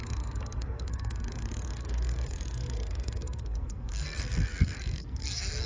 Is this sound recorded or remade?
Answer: remade